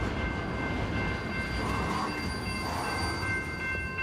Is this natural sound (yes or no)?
yes